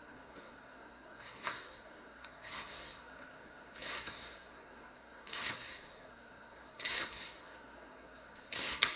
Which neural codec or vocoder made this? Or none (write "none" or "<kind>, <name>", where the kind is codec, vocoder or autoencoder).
codec, SNAC